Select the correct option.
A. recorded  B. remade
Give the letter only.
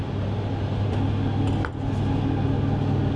A